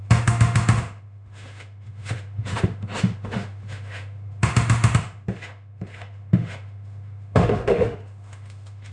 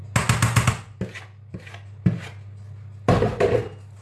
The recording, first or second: second